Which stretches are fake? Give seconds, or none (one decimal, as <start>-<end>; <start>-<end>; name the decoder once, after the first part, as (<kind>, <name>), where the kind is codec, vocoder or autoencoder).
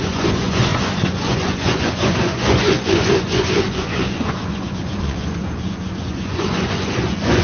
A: 0.0-7.4 (vocoder, Vocos)